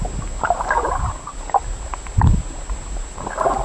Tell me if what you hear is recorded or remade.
recorded